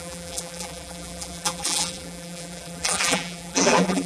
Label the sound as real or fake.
fake